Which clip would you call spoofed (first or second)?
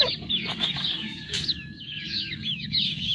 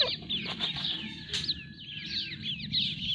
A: first